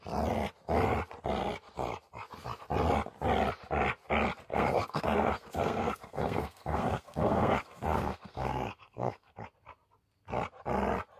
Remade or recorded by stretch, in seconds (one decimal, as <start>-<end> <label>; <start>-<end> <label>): 0.0-4.5 recorded; 4.5-9.3 remade; 9.3-11.2 recorded